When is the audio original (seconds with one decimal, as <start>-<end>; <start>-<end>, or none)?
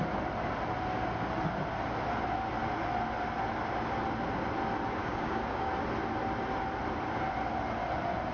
0.0-5.0; 5.7-8.3